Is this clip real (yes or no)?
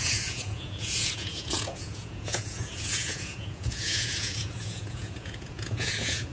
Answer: no